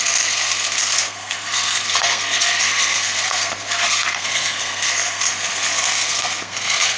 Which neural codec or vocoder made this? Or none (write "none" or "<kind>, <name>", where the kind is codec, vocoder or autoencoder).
codec, SNAC